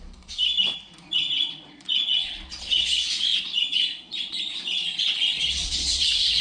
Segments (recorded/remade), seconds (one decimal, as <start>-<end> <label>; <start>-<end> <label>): 0.0-0.4 remade; 0.4-1.0 recorded; 1.0-6.4 remade